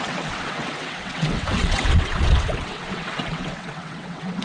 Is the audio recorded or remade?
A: remade